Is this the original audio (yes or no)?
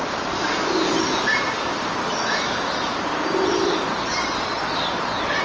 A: no